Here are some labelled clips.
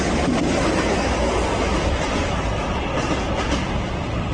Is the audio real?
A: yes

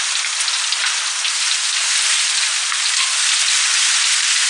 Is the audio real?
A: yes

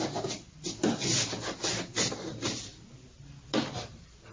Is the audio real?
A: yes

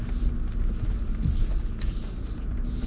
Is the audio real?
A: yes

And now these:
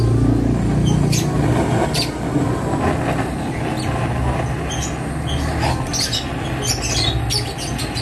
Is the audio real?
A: yes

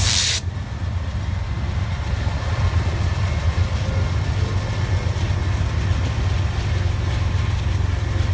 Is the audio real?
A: yes